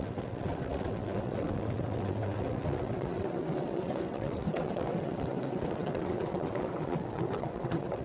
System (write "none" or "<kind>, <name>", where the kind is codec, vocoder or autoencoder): vocoder, WaveNeXt